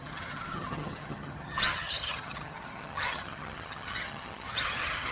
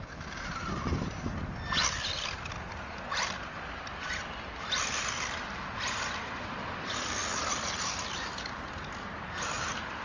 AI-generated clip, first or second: first